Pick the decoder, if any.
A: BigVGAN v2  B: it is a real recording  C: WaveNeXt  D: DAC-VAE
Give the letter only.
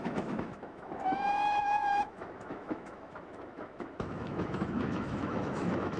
D